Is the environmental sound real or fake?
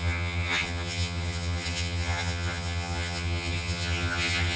fake